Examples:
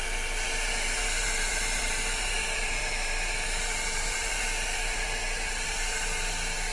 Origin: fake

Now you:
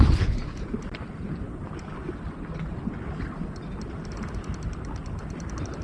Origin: real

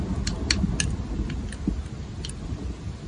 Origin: real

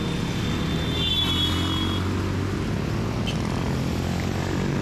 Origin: real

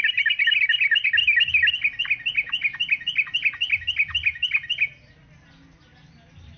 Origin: real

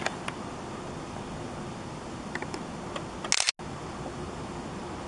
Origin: real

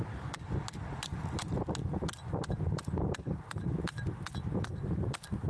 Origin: real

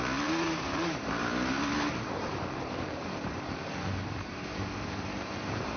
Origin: fake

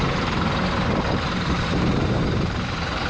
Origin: fake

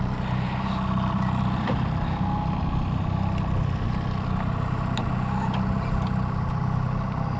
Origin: real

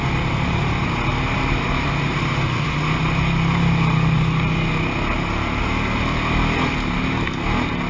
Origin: real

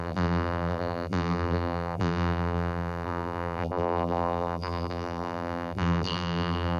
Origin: fake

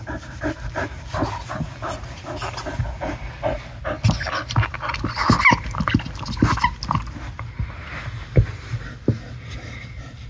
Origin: real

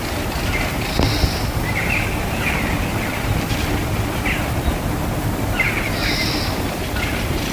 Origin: real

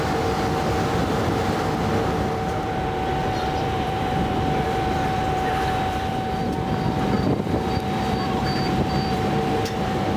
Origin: fake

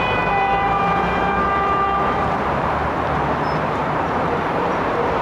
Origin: fake